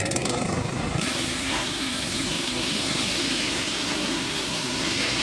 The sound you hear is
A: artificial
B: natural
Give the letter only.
A